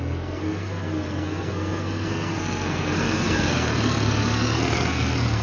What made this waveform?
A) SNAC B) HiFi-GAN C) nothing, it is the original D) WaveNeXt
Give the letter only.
A